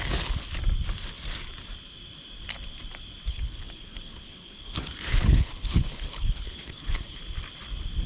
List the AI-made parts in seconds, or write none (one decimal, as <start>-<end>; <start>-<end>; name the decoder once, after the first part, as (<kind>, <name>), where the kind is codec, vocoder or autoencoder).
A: 3.3-7.2 (codec, HILCodec)